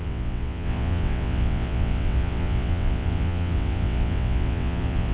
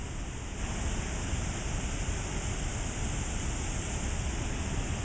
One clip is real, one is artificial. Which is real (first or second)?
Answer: second